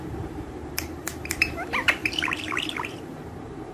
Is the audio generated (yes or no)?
yes